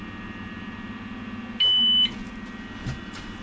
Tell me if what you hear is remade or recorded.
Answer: recorded